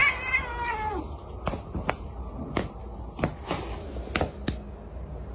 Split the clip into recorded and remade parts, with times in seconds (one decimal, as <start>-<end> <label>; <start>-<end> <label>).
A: 0.0-5.3 recorded